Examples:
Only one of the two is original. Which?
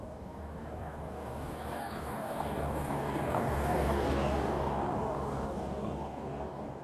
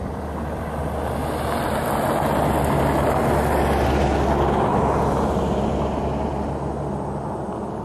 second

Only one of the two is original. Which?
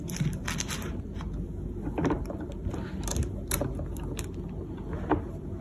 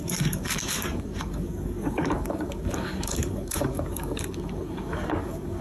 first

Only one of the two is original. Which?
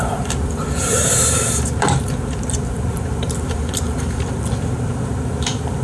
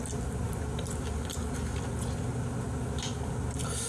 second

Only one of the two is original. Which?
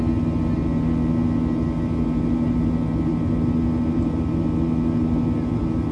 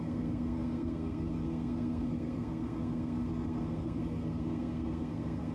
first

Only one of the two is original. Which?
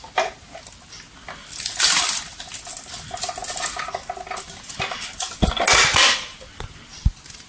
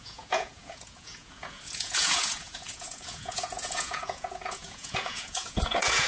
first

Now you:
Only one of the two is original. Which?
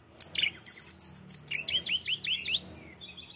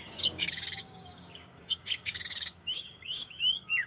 first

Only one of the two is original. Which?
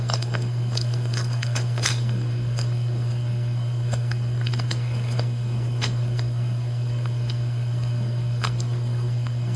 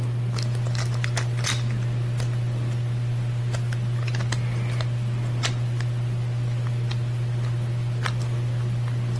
second